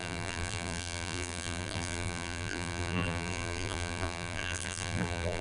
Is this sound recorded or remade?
remade